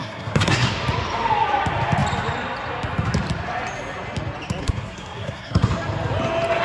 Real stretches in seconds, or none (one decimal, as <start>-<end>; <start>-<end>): 0.7-4.6; 5.7-6.6